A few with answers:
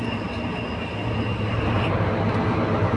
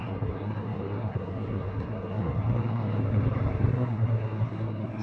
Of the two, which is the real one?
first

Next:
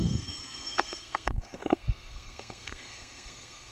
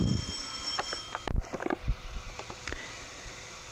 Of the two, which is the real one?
second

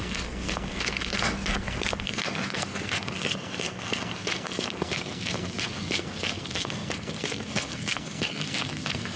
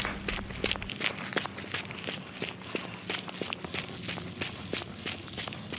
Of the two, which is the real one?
second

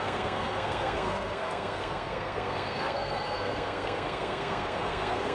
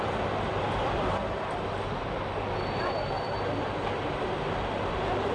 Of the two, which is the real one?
second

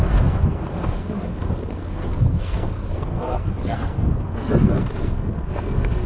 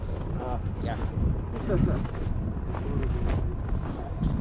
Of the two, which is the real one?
second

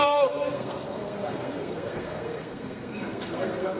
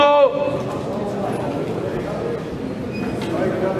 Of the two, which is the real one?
second